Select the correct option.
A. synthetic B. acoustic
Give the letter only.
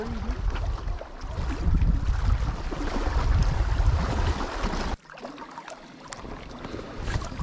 B